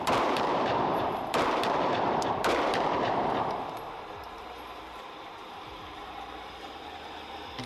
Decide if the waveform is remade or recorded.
remade